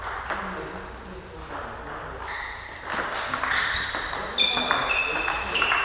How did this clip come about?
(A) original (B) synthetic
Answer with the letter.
A